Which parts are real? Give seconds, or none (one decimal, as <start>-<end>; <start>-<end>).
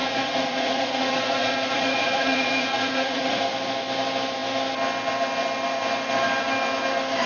3.4-7.3